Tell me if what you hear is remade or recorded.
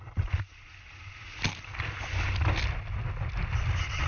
recorded